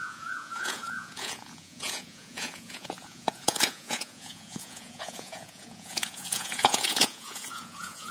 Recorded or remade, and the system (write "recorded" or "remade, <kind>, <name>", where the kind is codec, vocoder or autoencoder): remade, vocoder, Vocos